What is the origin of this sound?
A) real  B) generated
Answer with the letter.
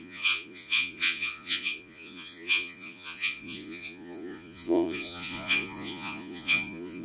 B